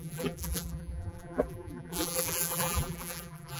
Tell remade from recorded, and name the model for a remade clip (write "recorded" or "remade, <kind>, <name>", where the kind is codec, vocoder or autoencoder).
remade, vocoder, BigVGAN v2